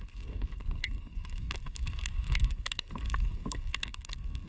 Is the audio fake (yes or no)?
yes